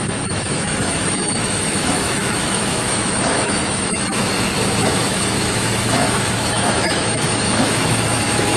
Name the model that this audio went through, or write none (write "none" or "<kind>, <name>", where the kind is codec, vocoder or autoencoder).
autoencoder, DAC-VAE